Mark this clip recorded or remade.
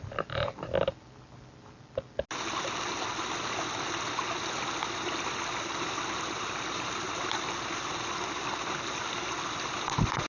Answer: recorded